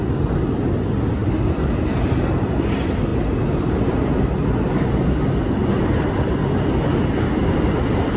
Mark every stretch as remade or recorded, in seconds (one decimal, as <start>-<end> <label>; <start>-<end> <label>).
0.0-8.2 recorded